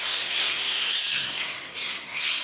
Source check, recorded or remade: remade